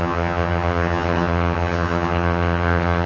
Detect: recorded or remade remade